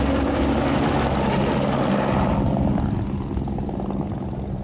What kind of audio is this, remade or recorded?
recorded